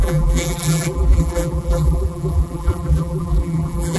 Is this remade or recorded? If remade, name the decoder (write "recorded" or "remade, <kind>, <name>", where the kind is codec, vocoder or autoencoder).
remade, vocoder, BigVGAN v2